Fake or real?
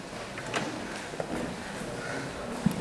real